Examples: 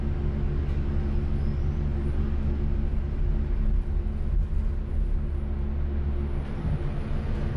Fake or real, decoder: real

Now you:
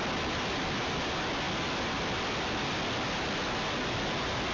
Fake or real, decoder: real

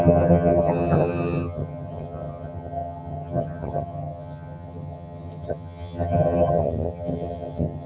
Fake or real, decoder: fake, vocoder, HiFi-GAN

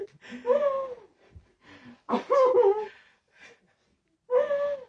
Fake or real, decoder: real